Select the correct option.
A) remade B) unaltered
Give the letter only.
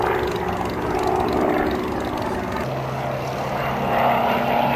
B